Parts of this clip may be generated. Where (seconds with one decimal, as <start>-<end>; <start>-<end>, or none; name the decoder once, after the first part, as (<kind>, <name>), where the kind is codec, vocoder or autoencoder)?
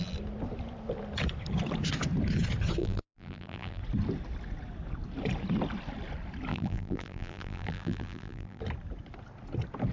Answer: 2.8-3.8 (vocoder, BigVGAN v2); 6.5-8.6